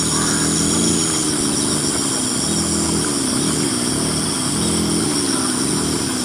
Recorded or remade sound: recorded